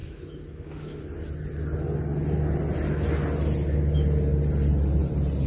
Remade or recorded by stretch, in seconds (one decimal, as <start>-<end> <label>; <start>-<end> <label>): 0.0-1.0 remade; 1.0-5.5 recorded